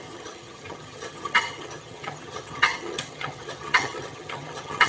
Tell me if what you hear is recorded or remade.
remade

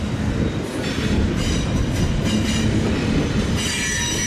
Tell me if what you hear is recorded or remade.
recorded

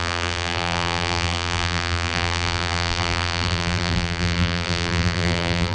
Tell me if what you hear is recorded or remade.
remade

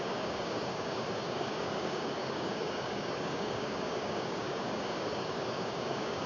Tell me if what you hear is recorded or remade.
remade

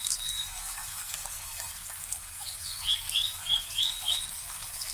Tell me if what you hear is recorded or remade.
remade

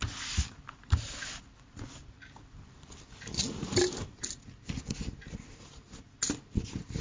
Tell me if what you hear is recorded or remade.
recorded